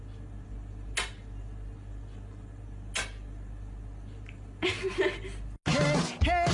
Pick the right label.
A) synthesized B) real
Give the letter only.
B